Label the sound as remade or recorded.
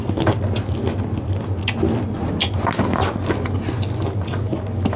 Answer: recorded